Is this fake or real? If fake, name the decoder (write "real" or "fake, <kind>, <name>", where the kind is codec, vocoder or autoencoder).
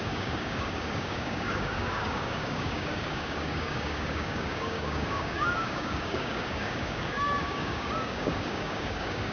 fake, codec, DAC